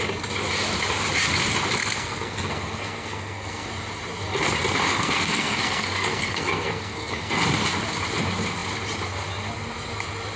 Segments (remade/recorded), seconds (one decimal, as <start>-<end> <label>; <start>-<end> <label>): 0.0-1.8 recorded; 1.8-3.7 remade; 3.7-4.9 recorded; 4.9-7.4 remade; 7.4-10.4 recorded